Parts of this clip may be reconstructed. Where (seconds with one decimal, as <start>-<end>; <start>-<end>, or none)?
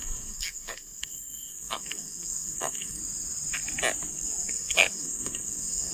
0.0-3.0; 4.1-5.9